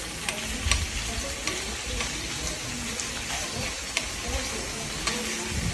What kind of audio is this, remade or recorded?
recorded